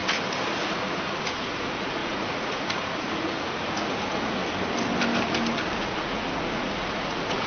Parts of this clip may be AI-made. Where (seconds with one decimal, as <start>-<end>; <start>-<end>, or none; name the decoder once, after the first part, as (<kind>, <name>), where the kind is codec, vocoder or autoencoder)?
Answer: 0.5-4.4 (vocoder, Vocos); 5.8-7.5